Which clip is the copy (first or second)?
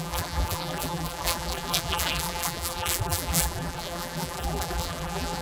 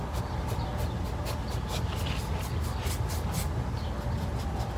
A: first